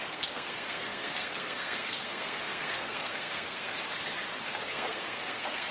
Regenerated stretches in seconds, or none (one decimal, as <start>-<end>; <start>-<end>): 0.0-3.7; 4.4-5.7